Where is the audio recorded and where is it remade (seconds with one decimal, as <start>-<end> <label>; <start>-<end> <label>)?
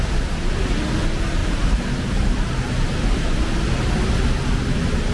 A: 0.0-1.4 recorded; 1.4-3.3 remade; 3.3-5.1 recorded